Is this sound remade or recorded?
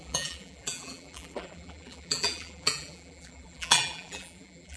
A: remade